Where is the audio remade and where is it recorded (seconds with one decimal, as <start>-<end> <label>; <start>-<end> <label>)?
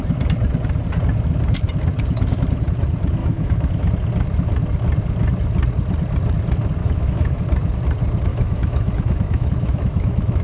0.0-3.2 recorded; 3.2-3.9 remade; 3.9-6.8 recorded; 6.8-7.4 remade; 7.4-8.3 recorded; 8.3-10.4 remade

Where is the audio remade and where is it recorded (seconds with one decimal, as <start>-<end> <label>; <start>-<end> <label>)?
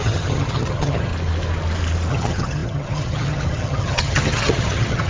0.0-1.1 remade; 1.1-2.1 recorded; 2.1-5.1 remade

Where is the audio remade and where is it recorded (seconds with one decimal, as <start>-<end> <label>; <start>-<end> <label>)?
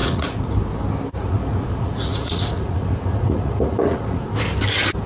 0.0-0.5 remade; 0.5-1.2 recorded; 1.2-4.3 remade; 4.3-5.1 recorded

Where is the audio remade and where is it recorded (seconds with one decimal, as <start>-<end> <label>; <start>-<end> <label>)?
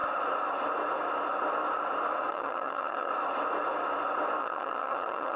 0.0-2.3 recorded; 2.3-3.1 remade; 3.1-4.4 recorded; 4.4-5.4 remade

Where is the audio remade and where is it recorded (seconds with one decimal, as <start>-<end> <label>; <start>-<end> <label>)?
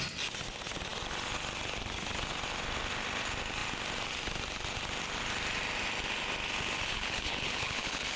0.0-6.9 recorded; 6.9-8.2 remade